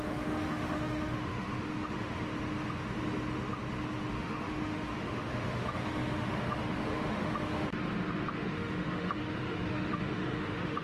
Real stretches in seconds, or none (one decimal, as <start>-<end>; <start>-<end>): 2.3-4.1; 7.7-8.3